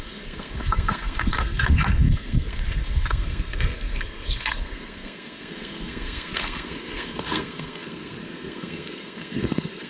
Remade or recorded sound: remade